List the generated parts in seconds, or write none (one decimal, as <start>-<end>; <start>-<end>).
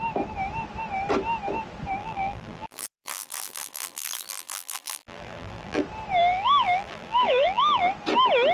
2.0-5.8; 6.2-7.9